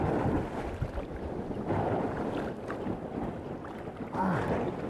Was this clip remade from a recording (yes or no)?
no